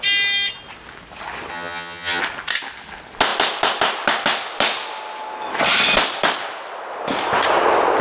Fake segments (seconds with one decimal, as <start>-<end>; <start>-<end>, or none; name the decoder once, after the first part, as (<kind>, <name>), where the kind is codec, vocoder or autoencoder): 1.5-2.2 (vocoder, HiFi-GAN)